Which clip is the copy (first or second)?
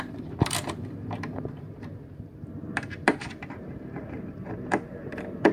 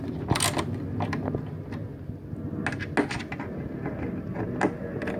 first